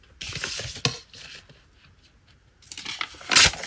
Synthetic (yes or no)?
no